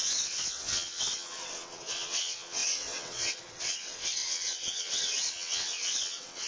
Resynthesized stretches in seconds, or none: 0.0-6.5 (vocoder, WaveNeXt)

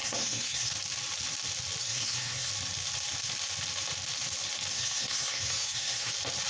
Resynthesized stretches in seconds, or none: 0.0-0.7 (codec, SNAC); 1.8-2.5; 4.7-6.1

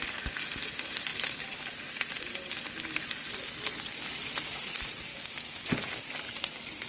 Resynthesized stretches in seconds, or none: 5.1-6.0 (codec, DAC)